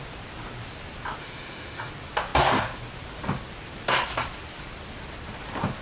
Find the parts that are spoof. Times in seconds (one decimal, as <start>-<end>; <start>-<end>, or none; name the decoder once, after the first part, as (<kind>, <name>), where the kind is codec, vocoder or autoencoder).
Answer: 1.2-1.9 (autoencoder, DAC-VAE)